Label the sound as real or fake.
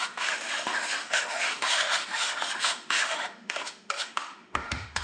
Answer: fake